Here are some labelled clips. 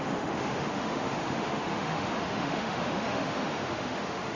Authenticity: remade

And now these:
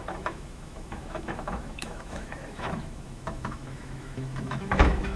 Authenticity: remade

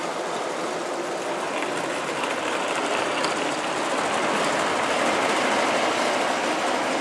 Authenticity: recorded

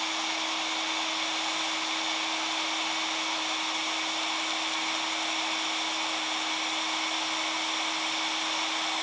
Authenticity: recorded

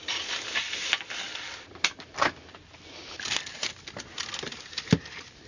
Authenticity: recorded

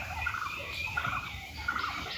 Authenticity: remade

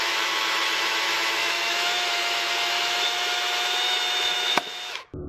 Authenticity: remade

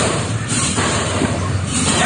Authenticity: remade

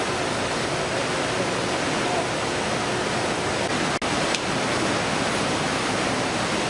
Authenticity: recorded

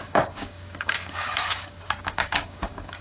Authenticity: remade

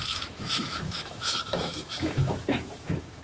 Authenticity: remade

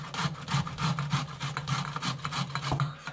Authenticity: recorded